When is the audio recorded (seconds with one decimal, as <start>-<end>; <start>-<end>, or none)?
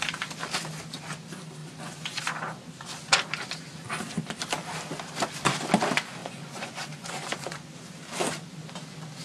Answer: 0.0-1.6; 2.2-6.2; 7.7-9.2